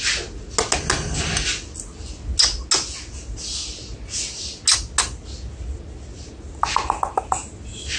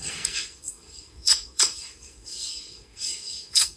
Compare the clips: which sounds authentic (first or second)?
first